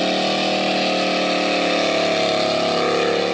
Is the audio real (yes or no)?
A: yes